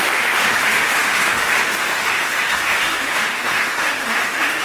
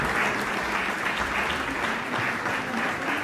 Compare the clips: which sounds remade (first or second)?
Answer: first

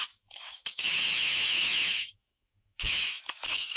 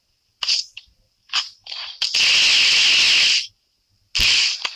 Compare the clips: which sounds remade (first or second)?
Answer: first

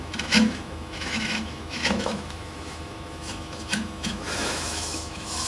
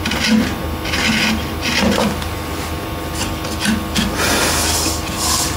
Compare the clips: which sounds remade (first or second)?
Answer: first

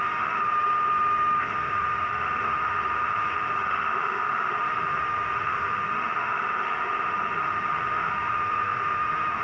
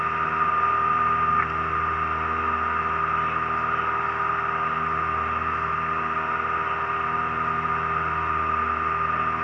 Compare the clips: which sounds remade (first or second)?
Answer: first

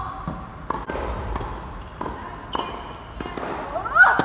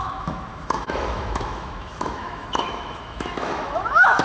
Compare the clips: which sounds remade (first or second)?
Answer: second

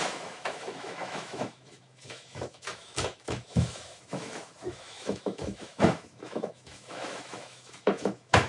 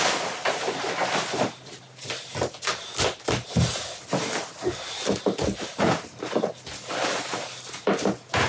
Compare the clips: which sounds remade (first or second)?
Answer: first